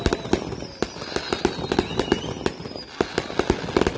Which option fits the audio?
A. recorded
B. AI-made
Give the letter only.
A